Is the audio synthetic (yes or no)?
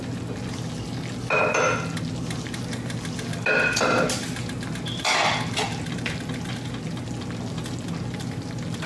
no